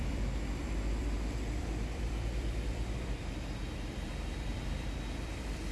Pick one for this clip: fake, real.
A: fake